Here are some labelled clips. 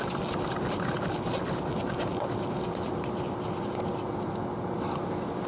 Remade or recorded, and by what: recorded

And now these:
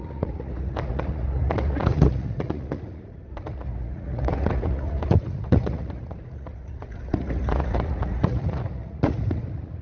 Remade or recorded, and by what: remade, vocoder, Vocos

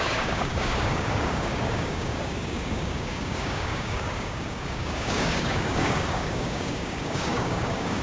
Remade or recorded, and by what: remade, codec, DAC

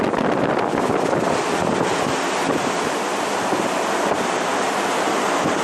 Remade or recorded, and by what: recorded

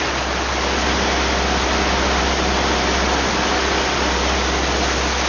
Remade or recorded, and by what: recorded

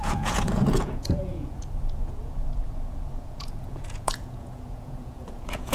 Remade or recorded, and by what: remade, vocoder, Vocos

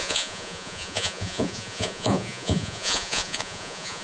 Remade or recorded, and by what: remade, vocoder, Vocos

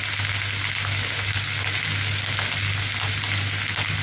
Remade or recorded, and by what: recorded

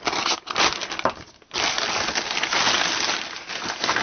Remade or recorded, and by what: recorded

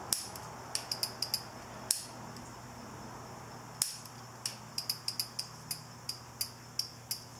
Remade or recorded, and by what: recorded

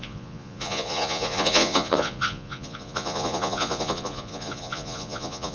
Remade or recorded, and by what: remade, vocoder, Vocos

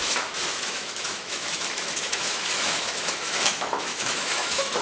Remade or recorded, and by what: remade, autoencoder, DAC-VAE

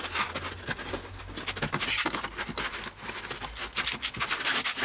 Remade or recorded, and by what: recorded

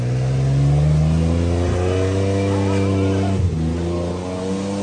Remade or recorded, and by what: recorded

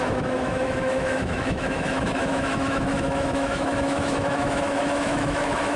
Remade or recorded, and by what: remade, autoencoder, DAC-VAE